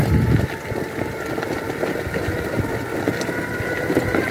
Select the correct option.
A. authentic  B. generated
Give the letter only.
A